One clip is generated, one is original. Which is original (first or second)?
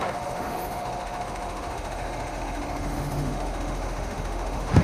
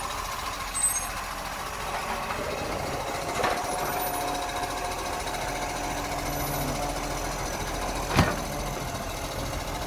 second